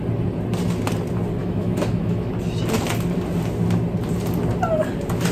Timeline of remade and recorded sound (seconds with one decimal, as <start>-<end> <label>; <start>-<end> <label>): 0.0-1.4 recorded; 1.4-2.3 remade; 2.3-5.3 recorded